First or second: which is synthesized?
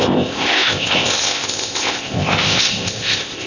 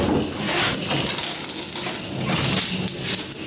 first